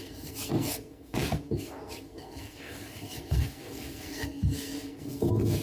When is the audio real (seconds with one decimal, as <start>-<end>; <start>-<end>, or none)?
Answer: none